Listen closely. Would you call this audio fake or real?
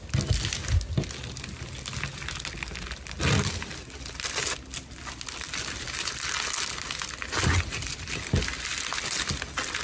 real